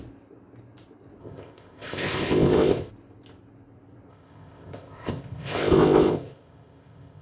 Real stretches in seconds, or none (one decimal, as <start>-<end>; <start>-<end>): 0.0-1.2; 2.9-4.1